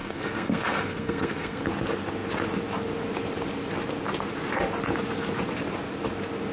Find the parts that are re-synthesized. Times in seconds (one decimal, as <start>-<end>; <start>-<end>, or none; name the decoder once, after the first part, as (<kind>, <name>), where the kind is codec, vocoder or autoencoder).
0.0-1.6 (codec, SNAC)